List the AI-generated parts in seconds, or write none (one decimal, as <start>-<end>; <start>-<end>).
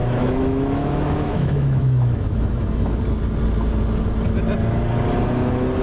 0.0-3.0